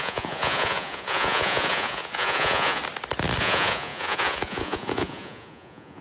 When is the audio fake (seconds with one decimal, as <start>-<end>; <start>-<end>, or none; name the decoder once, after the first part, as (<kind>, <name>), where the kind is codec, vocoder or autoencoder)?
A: 0.0-2.8 (vocoder, Vocos); 3.4-6.0